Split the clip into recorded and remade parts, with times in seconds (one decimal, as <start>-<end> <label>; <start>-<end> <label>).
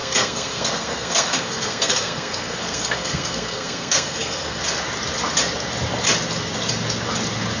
0.0-4.6 remade; 4.6-7.6 recorded